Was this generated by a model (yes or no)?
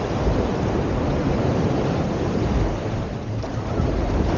yes